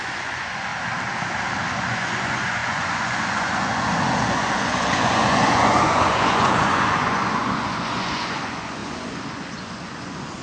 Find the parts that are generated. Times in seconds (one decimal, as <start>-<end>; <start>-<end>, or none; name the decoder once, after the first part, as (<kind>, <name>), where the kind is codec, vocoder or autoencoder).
0.0-0.7 (vocoder, Vocos); 1.7-10.4